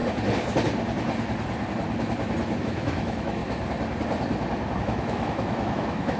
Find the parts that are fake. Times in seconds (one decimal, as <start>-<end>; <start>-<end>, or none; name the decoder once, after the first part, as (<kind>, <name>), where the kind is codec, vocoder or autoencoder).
2.6-3.4 (autoencoder, DAC-VAE); 4.8-6.2